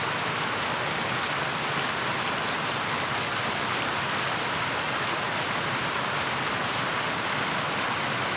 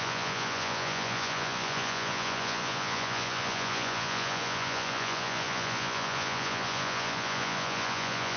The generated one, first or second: second